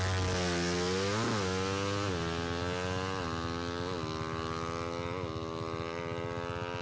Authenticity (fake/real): real